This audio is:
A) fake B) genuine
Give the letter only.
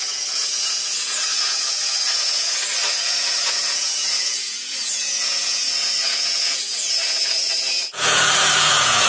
A